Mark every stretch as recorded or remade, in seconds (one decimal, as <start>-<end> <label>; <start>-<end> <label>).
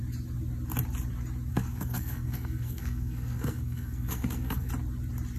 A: 0.0-1.5 recorded; 1.5-4.7 remade; 4.7-5.4 recorded